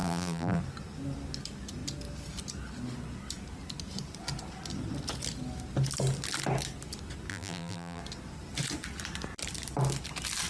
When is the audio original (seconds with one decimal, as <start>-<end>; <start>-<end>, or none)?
0.6-7.3; 8.0-10.5